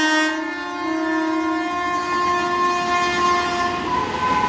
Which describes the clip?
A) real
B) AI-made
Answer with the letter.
A